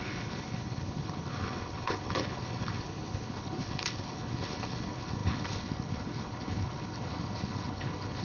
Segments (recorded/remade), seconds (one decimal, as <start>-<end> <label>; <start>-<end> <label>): 0.0-8.2 remade